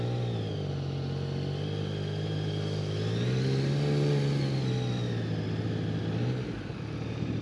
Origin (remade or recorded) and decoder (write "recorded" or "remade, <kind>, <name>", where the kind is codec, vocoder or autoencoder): recorded